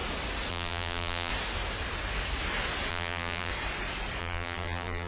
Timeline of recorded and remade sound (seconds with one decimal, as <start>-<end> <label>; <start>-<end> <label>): 0.0-0.5 recorded; 0.5-1.3 remade; 1.3-2.9 recorded; 2.9-3.5 remade; 3.5-4.2 recorded; 4.2-5.1 remade